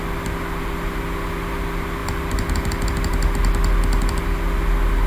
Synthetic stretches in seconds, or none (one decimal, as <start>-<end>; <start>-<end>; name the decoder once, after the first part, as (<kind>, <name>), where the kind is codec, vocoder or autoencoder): none